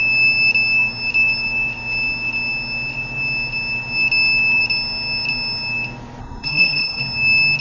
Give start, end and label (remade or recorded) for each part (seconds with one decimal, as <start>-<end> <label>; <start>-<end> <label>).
0.0-6.2 recorded; 6.2-7.0 remade; 7.0-7.6 recorded